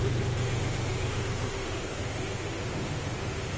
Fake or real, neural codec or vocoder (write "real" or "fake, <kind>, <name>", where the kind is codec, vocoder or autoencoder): fake, autoencoder, DAC-VAE